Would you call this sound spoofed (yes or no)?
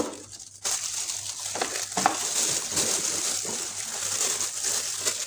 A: no